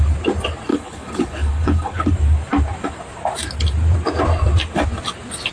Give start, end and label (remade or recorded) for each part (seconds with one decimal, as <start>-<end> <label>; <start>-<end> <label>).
0.0-0.7 recorded; 0.7-2.1 remade; 2.1-5.5 recorded